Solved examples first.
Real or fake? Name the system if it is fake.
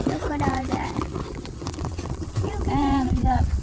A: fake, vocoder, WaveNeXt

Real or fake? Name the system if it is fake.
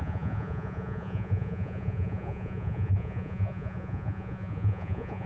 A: fake, vocoder, Vocos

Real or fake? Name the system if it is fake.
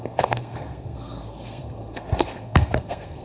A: fake, codec, SNAC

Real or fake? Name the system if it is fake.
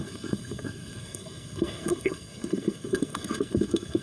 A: fake, codec, SNAC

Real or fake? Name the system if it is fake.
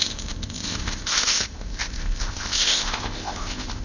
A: fake, codec, ZipCodec